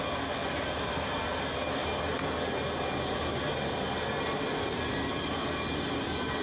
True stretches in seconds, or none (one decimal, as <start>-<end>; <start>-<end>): 0.0-6.4